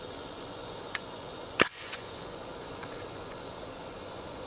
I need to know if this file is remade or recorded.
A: remade